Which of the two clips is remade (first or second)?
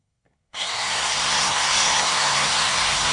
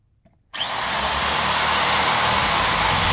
first